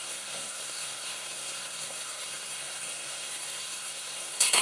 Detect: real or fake fake